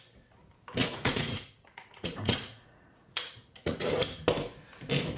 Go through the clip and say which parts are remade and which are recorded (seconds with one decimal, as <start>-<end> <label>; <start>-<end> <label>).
0.0-0.8 recorded; 0.8-3.9 remade; 3.9-5.2 recorded